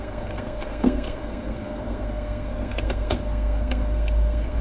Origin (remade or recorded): remade